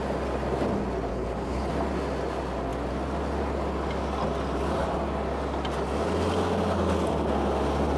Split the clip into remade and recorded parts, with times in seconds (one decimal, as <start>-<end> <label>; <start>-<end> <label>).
0.0-1.1 recorded; 1.1-1.7 remade; 1.7-8.0 recorded